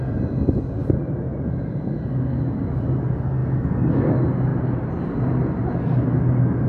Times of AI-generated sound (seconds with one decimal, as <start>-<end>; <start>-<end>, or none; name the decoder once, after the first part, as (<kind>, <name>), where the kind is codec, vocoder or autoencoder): none